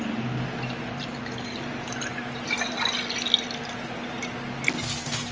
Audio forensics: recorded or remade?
recorded